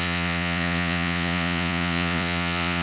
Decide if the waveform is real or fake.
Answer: fake